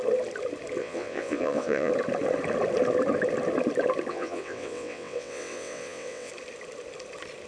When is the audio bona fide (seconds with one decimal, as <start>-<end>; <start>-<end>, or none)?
0.0-0.8; 1.9-4.1; 6.3-7.5